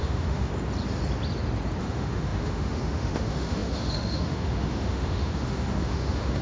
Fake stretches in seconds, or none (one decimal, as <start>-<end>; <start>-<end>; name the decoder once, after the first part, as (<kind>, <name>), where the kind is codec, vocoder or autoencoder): 0.0-0.5 (autoencoder, DAC-VAE); 1.8-6.4